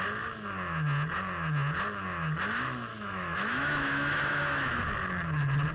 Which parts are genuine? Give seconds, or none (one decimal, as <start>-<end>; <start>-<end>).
0.0-2.9; 4.8-5.7